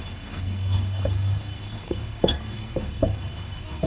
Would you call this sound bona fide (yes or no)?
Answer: no